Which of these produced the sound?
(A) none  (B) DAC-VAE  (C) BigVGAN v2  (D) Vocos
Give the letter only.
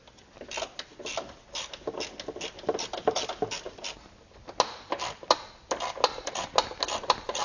A